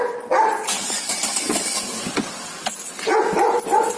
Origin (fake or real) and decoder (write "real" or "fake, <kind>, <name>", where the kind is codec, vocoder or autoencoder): real